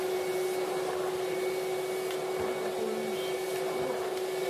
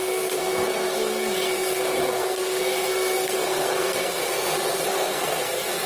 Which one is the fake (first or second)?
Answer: second